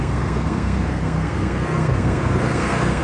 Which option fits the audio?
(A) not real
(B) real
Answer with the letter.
A